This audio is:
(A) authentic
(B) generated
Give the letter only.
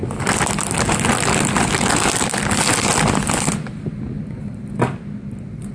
A